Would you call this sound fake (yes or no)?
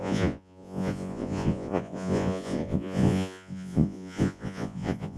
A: yes